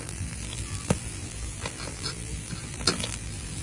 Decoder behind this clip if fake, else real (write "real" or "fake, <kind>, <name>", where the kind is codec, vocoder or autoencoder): fake, vocoder, BigVGAN v2